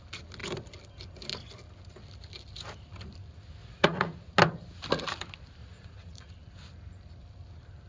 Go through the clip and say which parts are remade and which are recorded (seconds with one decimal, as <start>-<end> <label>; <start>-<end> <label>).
0.0-3.6 recorded; 3.6-4.3 remade; 4.3-5.6 recorded; 5.6-6.3 remade; 6.3-7.9 recorded